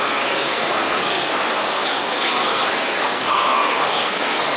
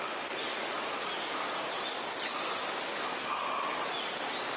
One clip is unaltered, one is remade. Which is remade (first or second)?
first